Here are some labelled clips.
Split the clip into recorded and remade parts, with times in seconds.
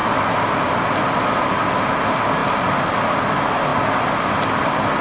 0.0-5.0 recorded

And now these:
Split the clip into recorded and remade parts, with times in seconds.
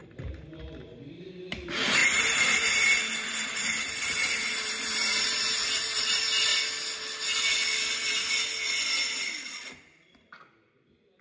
0.0-1.2 recorded; 1.2-6.5 remade; 6.5-11.2 recorded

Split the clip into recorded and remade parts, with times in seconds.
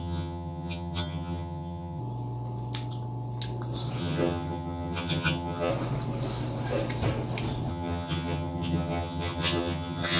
0.0-2.0 remade; 2.0-4.0 recorded; 4.0-5.7 remade; 5.7-7.7 recorded; 7.7-10.2 remade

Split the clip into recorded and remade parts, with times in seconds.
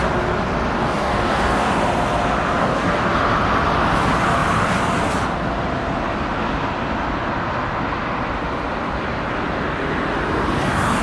0.0-0.8 recorded; 0.8-1.8 remade; 1.8-2.6 recorded; 2.6-3.1 remade; 3.1-11.0 recorded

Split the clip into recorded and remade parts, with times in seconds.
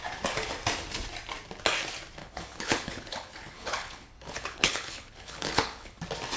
0.0-2.2 recorded; 2.2-6.0 remade; 6.0-6.4 recorded